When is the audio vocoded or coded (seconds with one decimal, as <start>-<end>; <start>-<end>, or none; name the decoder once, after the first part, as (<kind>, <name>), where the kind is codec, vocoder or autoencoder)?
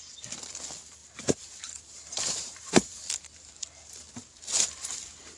1.0-3.5 (vocoder, BigVGAN v2)